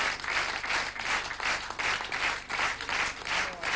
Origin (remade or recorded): recorded